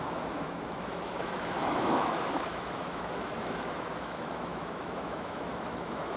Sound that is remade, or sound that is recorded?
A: remade